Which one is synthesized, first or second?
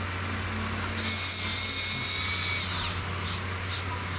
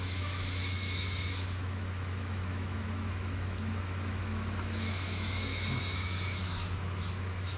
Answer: second